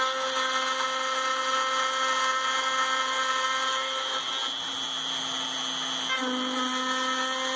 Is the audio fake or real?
real